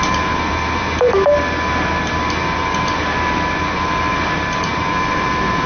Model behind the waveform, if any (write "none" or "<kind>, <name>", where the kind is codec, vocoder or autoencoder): vocoder, BigVGAN v2